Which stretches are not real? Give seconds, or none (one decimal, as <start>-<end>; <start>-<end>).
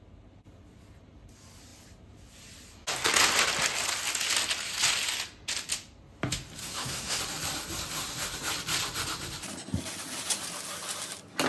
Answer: 6.6-7.2